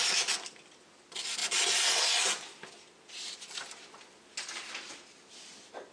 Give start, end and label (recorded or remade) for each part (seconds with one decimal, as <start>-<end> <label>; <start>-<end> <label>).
0.0-5.9 recorded